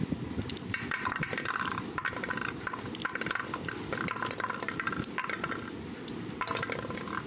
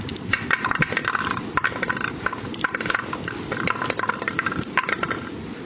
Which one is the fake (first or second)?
second